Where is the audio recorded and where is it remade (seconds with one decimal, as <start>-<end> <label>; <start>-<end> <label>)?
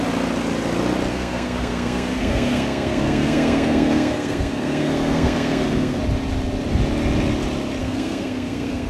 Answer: 0.0-1.1 recorded; 1.1-6.0 remade; 6.0-7.8 recorded; 7.8-8.9 remade